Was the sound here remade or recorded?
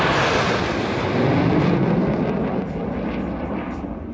recorded